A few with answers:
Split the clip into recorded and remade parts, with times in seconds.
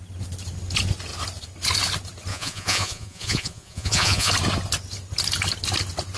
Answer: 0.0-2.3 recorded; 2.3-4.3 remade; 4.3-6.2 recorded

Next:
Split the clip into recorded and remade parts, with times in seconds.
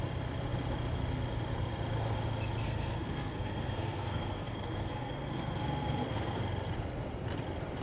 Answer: 0.0-2.6 recorded; 2.6-6.4 remade; 6.4-7.8 recorded